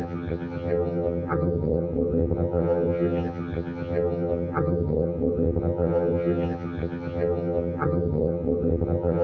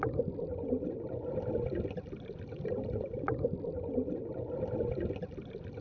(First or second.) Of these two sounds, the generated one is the first